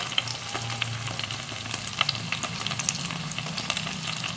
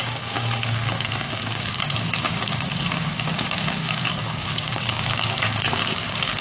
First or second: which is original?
first